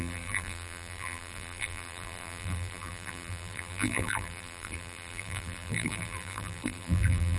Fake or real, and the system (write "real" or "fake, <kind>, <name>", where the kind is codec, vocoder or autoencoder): fake, vocoder, BigVGAN v2